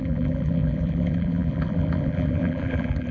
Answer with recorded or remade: remade